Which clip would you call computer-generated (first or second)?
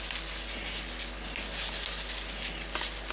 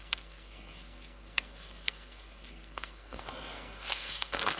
second